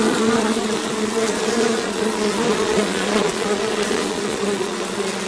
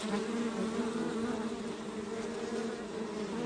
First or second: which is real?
second